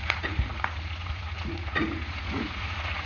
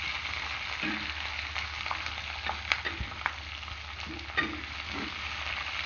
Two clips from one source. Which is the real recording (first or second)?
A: second